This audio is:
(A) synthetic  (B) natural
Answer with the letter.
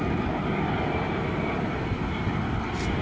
B